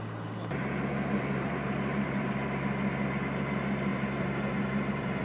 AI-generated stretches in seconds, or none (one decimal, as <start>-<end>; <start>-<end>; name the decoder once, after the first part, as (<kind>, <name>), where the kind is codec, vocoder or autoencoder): 0.6-2.3 (vocoder, BigVGAN v2); 3.9-5.2